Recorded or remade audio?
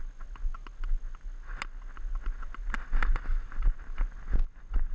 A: recorded